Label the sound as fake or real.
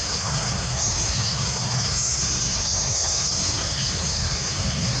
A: fake